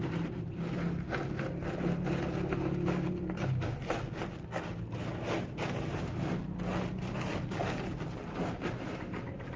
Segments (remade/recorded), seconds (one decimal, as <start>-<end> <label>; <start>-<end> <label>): 0.0-9.6 remade